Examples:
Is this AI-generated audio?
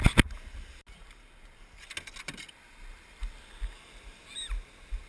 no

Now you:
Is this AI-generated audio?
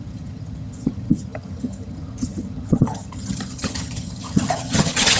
yes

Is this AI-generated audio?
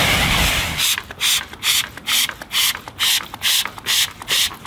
no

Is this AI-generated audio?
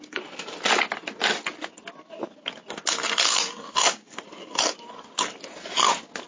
no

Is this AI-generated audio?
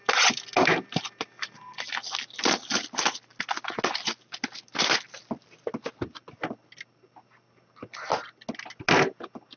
no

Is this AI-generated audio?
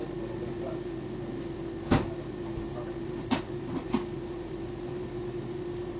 no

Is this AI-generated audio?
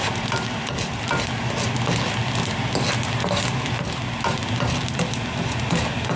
no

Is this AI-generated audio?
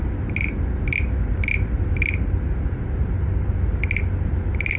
no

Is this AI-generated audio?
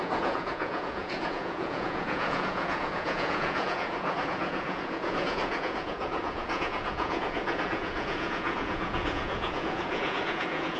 yes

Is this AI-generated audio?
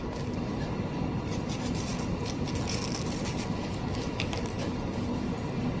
no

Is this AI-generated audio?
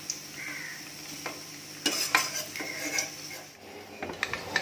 no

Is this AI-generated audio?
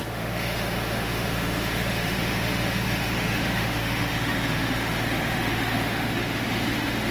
yes